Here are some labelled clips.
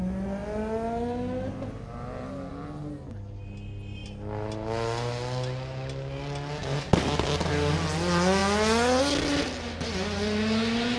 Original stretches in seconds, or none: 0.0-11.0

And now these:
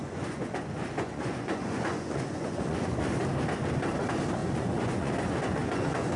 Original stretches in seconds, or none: 3.2-4.4